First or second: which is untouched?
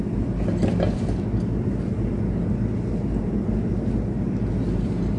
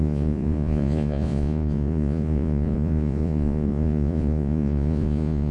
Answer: first